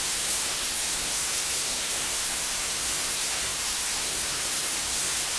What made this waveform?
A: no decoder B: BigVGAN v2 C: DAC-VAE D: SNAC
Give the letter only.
D